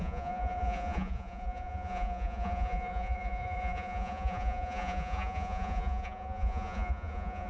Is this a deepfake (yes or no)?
yes